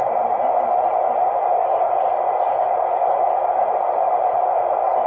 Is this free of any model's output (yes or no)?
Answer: yes